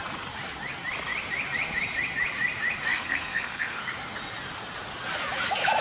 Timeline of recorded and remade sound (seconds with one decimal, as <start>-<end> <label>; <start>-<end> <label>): 0.0-2.9 recorded; 2.9-3.9 remade; 3.9-5.8 recorded